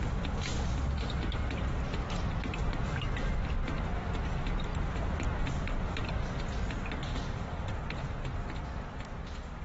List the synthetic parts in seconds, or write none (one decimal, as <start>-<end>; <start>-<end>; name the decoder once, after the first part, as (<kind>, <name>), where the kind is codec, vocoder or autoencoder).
none